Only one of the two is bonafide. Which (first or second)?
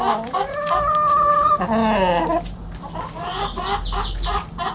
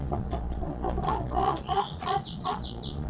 first